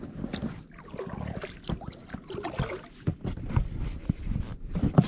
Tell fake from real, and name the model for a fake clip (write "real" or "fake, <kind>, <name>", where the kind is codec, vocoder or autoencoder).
real